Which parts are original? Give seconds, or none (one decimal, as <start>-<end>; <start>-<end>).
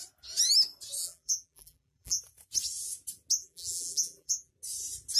0.0-1.0; 2.2-3.4; 4.5-5.2